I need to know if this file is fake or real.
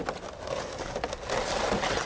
real